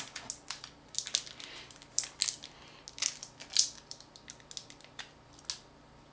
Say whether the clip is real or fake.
real